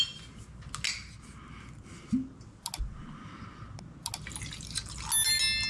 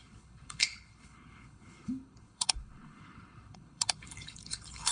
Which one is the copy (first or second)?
second